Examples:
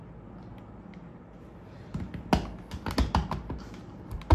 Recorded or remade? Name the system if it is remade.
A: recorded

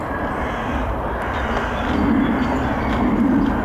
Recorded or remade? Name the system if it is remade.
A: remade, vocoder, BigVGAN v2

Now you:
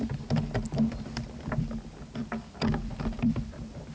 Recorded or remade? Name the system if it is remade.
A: remade, vocoder, BigVGAN v2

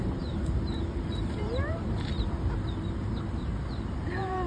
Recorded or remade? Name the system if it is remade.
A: remade, vocoder, BigVGAN v2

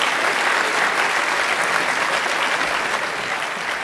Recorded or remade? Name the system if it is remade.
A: recorded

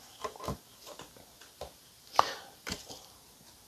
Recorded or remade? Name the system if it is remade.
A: recorded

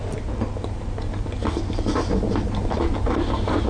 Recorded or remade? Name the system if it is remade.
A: recorded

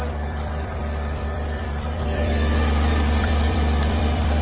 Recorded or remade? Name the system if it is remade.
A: remade, vocoder, BigVGAN v2